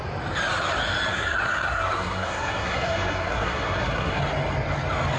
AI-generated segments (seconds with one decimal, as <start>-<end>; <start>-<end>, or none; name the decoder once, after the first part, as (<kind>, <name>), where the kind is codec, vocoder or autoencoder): 1.1-4.2 (codec, SNAC)